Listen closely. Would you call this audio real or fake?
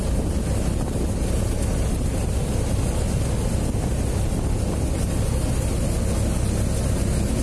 real